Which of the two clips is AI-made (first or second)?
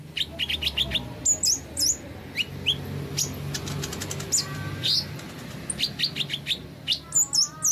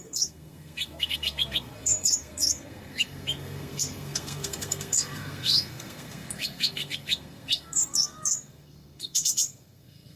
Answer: second